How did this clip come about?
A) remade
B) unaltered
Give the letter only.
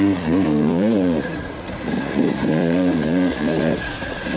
A